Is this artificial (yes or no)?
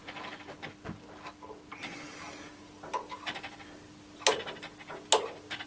no